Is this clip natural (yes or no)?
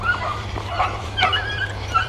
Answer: no